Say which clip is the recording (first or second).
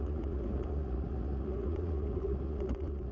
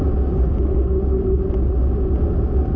second